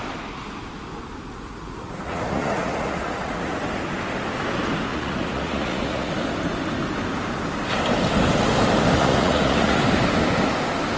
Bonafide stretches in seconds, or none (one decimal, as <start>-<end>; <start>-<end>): 0.0-1.3; 3.6-4.9; 6.1-9.0; 9.8-11.0